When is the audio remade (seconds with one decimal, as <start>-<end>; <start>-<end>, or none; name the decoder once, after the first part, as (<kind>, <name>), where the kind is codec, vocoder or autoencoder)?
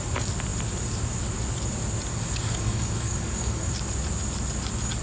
2.1-3.7 (codec, DAC)